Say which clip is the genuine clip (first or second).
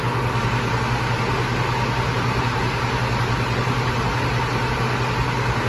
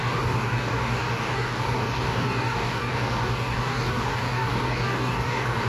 first